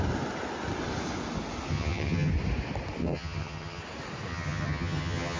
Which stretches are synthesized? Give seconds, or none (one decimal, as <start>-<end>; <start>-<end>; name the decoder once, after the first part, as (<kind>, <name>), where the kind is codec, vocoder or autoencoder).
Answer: 1.7-2.3 (vocoder, HiFi-GAN); 3.0-3.8; 4.3-5.4